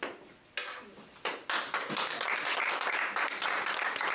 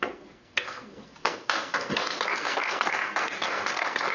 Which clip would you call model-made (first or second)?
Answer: second